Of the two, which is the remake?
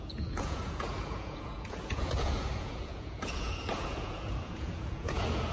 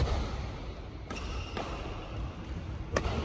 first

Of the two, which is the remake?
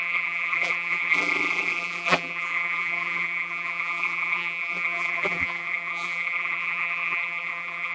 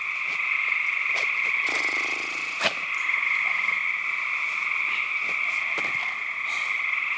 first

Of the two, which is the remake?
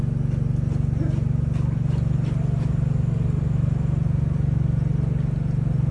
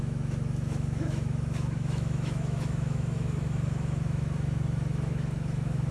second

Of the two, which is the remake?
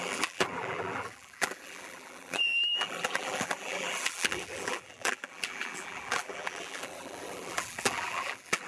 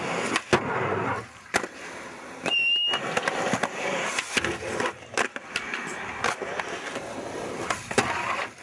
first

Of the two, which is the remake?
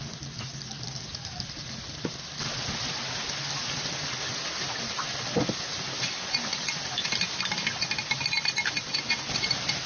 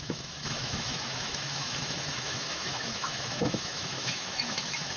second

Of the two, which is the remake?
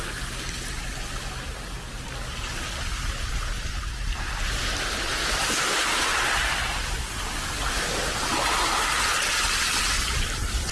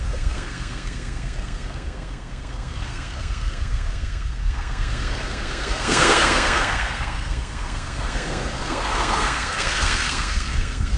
second